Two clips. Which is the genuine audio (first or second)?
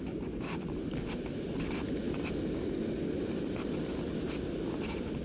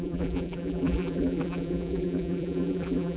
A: first